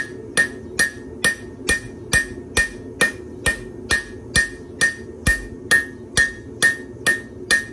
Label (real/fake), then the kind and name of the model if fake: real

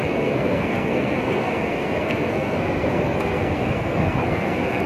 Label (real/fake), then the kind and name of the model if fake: fake, codec, SNAC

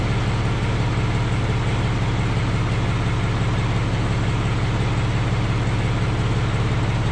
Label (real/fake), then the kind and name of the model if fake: real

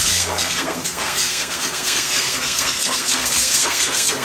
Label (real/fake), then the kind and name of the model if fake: fake, codec, SNAC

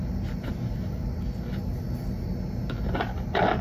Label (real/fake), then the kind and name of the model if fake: real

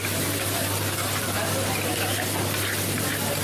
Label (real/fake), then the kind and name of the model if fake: real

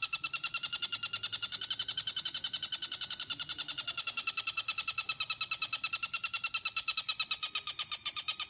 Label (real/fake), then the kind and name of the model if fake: real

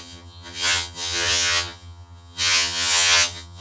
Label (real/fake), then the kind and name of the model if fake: fake, vocoder, HiFi-GAN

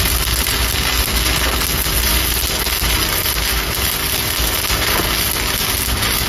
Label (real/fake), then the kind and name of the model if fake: real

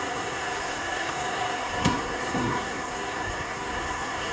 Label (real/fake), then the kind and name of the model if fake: fake, codec, SNAC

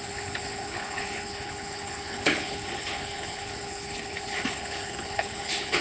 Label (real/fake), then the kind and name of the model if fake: fake, codec, HILCodec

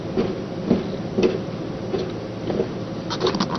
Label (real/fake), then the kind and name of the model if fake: real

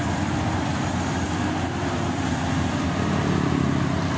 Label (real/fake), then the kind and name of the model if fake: real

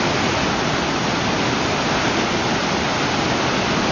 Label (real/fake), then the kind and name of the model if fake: real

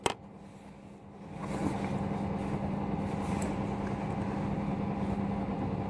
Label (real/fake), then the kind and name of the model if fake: real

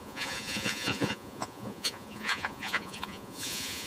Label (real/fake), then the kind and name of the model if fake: fake, vocoder, Vocos